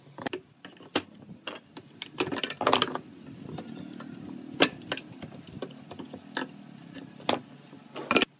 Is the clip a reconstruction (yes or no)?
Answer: no